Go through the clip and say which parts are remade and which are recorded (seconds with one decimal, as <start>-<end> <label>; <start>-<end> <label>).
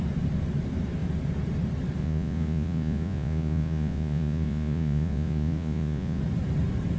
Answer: 0.0-2.0 recorded; 2.0-6.2 remade; 6.2-7.0 recorded